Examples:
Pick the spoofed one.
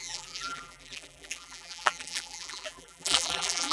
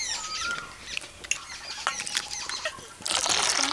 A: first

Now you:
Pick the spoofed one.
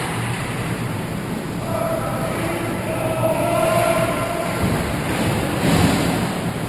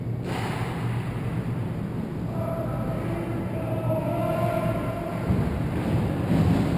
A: first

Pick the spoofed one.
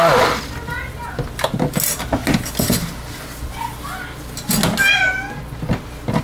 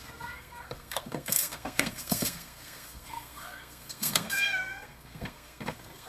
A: second